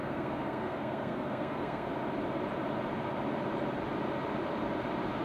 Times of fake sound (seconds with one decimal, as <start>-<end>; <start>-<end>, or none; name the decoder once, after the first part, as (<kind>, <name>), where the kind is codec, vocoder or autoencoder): 0.0-1.9 (codec, SNAC)